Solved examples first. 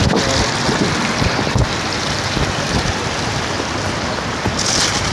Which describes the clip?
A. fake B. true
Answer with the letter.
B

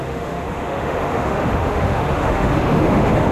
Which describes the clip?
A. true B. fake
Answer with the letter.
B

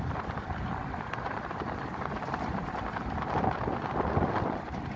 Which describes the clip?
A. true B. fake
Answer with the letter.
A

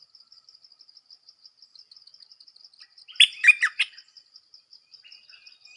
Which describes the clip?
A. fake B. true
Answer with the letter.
B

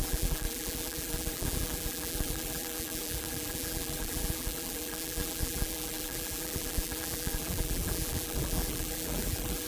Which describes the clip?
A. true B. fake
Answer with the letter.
B